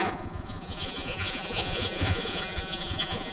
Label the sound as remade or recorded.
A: remade